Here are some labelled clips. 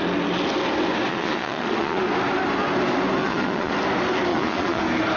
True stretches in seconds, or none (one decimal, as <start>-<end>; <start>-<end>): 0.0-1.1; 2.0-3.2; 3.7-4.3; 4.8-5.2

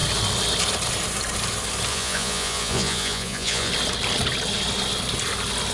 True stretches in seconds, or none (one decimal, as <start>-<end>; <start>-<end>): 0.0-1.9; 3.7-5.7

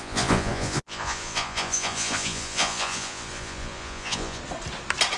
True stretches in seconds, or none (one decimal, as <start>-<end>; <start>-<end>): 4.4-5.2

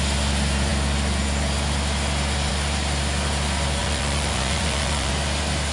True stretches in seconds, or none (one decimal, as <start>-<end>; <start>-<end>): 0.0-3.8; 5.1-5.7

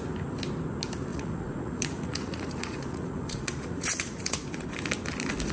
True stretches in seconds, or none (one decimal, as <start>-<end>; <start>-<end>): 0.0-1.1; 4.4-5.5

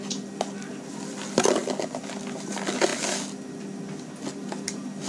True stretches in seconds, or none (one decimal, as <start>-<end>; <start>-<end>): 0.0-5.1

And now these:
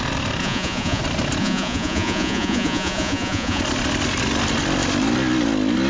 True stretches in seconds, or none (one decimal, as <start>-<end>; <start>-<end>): 0.0-0.4; 1.0-1.4; 3.6-5.9